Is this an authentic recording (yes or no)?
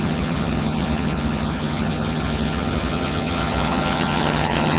no